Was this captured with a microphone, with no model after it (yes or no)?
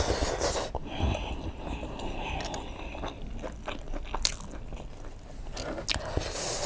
yes